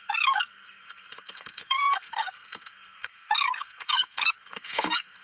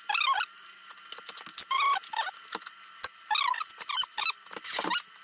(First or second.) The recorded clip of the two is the second